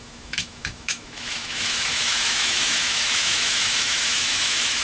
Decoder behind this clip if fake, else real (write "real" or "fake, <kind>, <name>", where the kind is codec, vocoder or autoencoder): fake, autoencoder, DAC-VAE